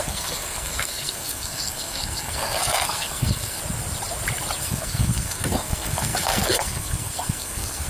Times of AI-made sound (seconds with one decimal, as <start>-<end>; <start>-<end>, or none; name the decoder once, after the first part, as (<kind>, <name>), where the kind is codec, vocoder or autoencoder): 0.0-3.6 (codec, SNAC); 4.6-7.9